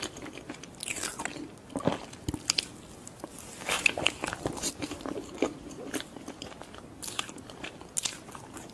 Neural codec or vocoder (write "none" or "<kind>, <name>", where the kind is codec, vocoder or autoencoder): none